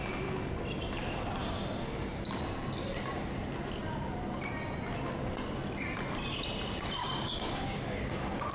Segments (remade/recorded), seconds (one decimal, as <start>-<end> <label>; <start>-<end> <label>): 0.0-7.0 recorded; 7.0-8.1 remade; 8.1-8.5 recorded